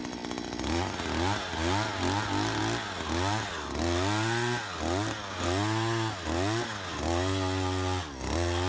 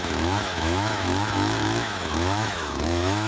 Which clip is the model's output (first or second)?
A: second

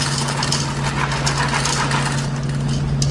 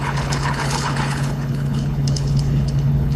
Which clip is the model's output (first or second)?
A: second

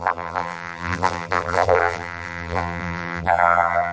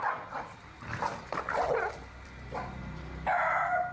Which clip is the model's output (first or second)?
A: first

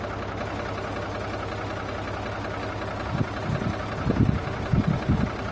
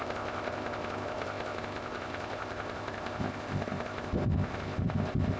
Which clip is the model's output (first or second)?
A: second